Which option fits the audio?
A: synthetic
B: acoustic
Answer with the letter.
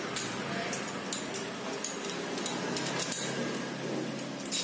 B